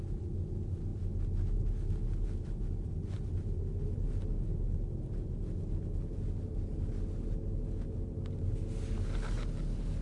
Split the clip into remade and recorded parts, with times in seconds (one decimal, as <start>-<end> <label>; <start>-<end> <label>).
0.0-10.0 recorded